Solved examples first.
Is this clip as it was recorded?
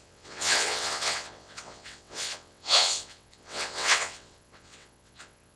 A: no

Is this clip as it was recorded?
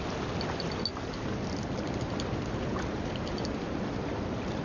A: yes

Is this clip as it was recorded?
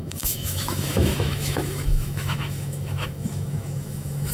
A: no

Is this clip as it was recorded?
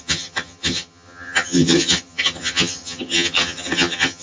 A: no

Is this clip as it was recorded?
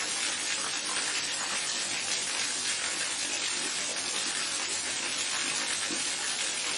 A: yes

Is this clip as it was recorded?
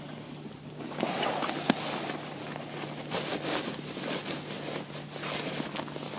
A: yes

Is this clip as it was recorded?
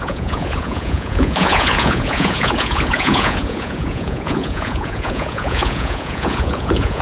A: no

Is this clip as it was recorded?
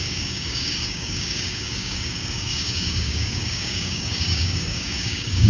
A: no